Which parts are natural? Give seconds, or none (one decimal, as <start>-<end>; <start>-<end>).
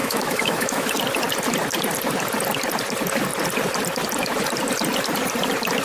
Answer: 0.9-5.8